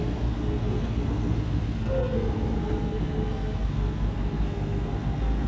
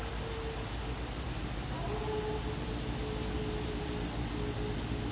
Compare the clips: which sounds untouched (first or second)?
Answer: second